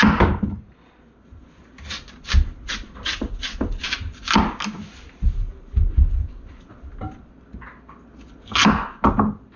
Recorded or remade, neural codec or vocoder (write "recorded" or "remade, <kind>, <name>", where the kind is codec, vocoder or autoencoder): recorded